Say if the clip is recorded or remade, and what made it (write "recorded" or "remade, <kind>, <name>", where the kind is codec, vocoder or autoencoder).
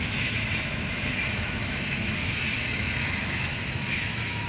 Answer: remade, autoencoder, DAC-VAE